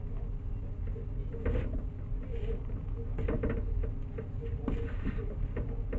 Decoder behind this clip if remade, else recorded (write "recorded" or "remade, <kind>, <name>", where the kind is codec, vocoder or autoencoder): recorded